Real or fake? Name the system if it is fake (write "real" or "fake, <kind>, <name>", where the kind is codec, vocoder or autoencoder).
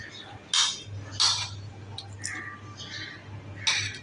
real